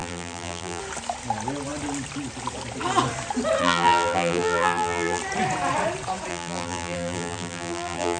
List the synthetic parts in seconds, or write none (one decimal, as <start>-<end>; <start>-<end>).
0.0-0.8; 3.6-5.2; 6.3-8.2